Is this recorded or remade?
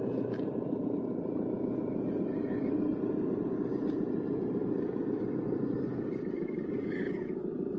recorded